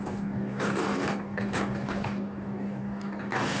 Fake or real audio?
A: fake